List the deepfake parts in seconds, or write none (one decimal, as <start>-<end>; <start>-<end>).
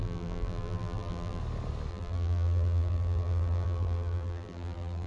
0.0-1.4; 1.9-5.1